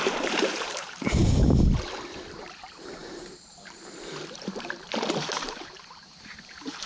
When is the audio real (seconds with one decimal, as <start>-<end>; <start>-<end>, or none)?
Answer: 1.2-2.3

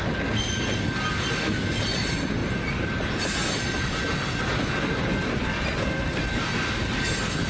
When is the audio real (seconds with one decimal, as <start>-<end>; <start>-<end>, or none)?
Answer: 0.0-2.4; 4.4-7.5

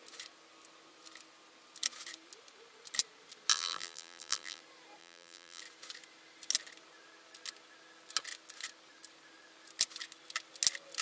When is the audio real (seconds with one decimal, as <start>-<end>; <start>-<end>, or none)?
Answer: 0.0-3.5; 4.6-5.0; 5.6-11.0

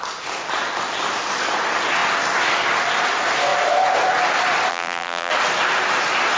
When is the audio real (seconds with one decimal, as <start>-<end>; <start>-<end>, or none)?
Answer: 0.0-4.7; 5.3-6.4

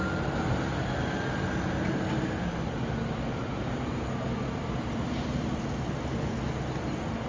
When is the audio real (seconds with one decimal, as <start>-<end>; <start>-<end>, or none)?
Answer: 0.0-7.3